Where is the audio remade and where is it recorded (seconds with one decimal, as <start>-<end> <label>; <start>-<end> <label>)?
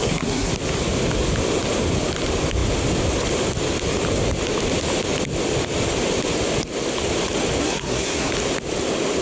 0.0-0.5 remade; 0.5-7.6 recorded; 7.6-8.3 remade; 8.3-9.2 recorded